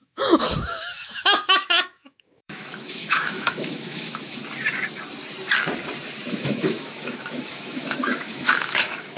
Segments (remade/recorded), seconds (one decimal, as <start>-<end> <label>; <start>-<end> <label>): 0.0-4.4 remade; 4.4-6.3 recorded; 6.3-9.2 remade